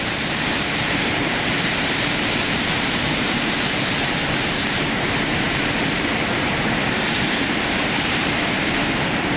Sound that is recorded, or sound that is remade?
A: remade